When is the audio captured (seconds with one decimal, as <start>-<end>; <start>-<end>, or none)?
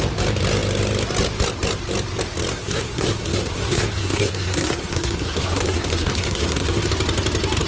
0.0-2.5; 6.9-7.7